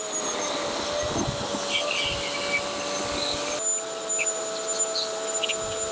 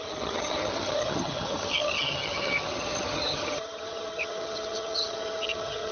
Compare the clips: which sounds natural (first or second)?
first